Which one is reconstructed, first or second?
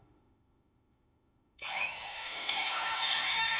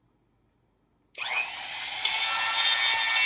first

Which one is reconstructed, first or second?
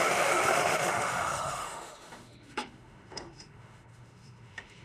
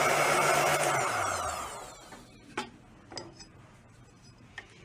first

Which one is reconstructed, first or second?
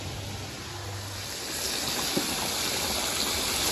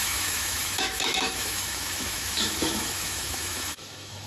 second